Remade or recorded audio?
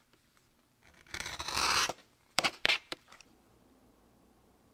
remade